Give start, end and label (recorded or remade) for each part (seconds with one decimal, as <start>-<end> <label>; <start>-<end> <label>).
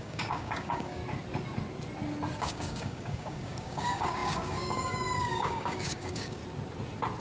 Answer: 0.0-1.0 remade; 1.0-2.4 recorded; 2.4-6.4 remade; 6.4-7.2 recorded